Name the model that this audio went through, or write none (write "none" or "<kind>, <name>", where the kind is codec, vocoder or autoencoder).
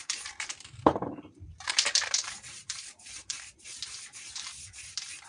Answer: vocoder, BigVGAN v2